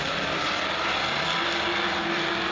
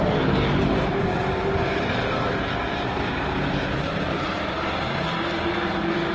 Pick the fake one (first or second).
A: second